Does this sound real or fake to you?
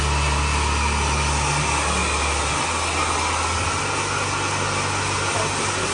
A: real